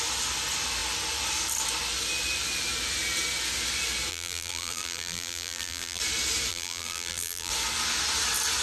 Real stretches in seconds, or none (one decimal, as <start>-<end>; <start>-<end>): 0.0-4.1; 6.0-6.5; 7.5-8.6